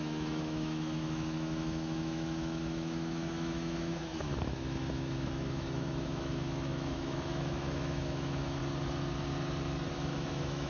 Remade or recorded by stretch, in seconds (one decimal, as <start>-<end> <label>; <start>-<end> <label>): 0.0-8.6 remade; 8.6-9.9 recorded; 9.9-10.7 remade